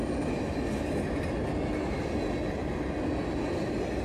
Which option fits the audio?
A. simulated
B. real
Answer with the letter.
B